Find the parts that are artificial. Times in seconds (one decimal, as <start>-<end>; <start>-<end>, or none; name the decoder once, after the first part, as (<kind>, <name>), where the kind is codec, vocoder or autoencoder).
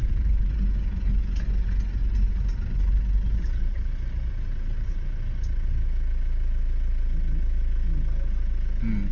0.0-0.6 (vocoder, BigVGAN v2); 2.0-5.3